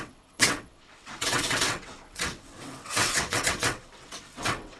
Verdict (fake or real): fake